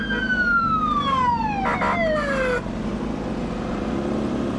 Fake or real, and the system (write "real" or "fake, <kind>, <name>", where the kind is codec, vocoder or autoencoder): real